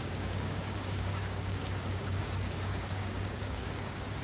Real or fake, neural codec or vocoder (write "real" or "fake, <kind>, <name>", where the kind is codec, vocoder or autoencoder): fake, codec, DAC